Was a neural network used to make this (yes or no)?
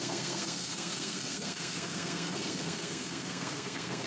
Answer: yes